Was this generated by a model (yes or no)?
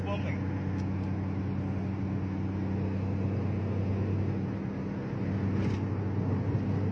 no